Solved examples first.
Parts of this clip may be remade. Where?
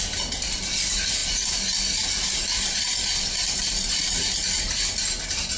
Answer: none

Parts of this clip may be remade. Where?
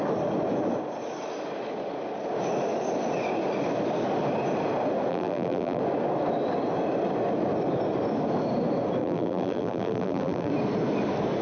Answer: 5.1-5.8 (vocoder, BigVGAN v2); 9.0-10.5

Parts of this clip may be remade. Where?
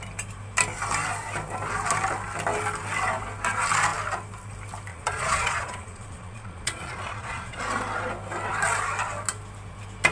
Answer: 4.9-7.6 (vocoder, Vocos)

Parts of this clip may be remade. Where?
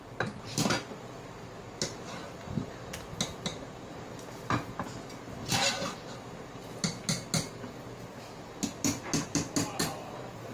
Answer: 2.2-2.8 (vocoder, BigVGAN v2); 3.5-4.1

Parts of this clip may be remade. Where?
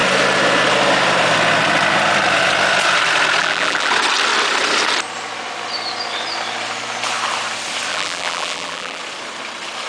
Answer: 3.4-3.9 (vocoder, BigVGAN v2); 7.9-9.0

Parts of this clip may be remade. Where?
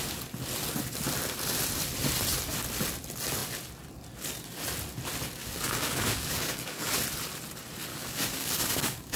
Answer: 5.4-6.9 (codec, DAC); 7.9-9.2